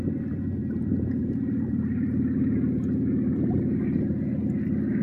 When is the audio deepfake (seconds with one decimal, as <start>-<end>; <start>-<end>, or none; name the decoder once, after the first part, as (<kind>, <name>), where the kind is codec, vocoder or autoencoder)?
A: 0.6-3.6 (vocoder, BigVGAN v2)